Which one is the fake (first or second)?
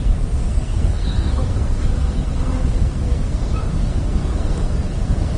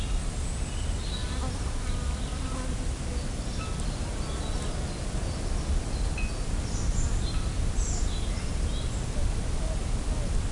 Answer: first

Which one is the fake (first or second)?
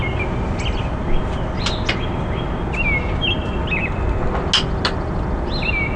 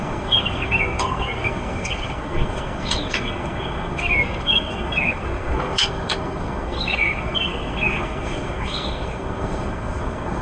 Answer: second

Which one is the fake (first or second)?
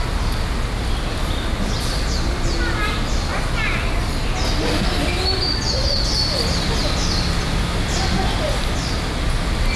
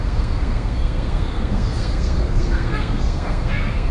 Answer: second